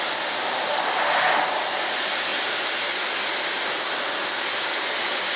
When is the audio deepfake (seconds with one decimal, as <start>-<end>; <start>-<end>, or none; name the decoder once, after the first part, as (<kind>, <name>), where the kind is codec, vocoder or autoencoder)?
0.7-1.4 (autoencoder, DAC-VAE)